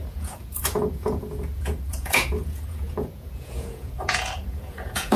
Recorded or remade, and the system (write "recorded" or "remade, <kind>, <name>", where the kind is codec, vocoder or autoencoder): remade, vocoder, Vocos